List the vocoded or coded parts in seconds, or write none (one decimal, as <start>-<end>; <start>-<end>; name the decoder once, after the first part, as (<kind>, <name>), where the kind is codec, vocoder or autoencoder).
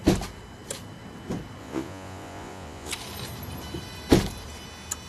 1.6-2.9 (vocoder, Vocos)